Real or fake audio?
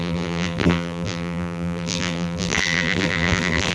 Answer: fake